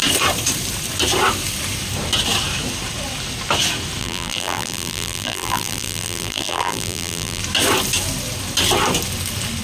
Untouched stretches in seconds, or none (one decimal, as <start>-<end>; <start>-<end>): 0.0-4.0; 7.4-9.6